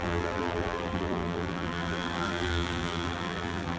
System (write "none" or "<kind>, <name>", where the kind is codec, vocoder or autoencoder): vocoder, BigVGAN v2